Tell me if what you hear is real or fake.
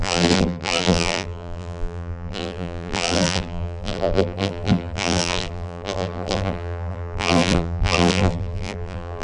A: fake